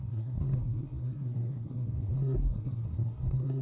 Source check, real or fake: fake